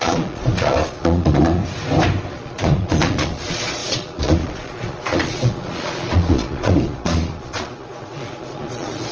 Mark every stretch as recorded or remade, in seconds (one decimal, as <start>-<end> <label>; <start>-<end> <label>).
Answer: 0.0-1.6 remade; 1.6-2.3 recorded; 2.3-9.1 remade

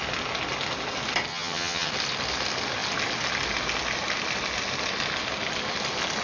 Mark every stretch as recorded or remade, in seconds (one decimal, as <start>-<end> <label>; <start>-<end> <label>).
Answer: 0.0-1.3 recorded; 1.3-1.9 remade; 1.9-6.2 recorded

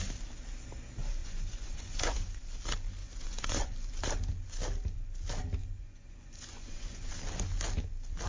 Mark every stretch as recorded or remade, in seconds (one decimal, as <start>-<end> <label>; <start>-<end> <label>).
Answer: 0.0-1.2 recorded; 1.2-2.4 remade; 2.4-3.0 recorded; 3.0-3.7 remade; 3.7-5.6 recorded; 5.6-7.1 remade; 7.1-8.3 recorded

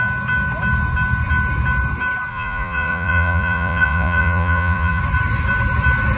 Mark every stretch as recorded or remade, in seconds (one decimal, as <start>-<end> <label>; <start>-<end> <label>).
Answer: 0.0-2.3 recorded; 2.3-5.0 remade; 5.0-6.2 recorded

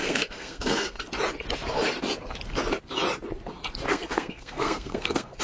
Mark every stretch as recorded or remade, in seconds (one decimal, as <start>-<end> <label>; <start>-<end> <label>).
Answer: 0.0-1.0 remade; 1.0-3.9 recorded; 3.9-5.4 remade

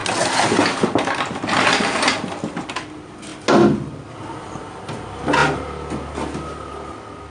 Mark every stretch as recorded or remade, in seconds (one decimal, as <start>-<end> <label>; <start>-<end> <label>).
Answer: 0.0-7.3 recorded

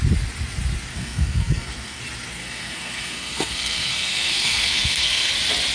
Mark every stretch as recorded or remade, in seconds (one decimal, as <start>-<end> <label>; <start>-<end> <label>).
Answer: 0.0-0.9 recorded; 0.9-2.0 remade; 2.0-2.4 recorded; 2.4-5.3 remade; 5.3-5.7 recorded